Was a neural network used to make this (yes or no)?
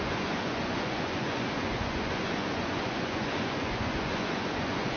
yes